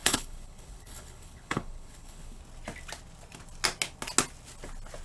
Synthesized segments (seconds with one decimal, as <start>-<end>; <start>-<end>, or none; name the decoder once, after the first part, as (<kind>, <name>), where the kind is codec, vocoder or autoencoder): 0.0-2.4 (codec, HILCodec)